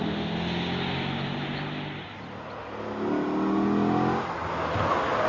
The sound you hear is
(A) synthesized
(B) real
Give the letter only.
B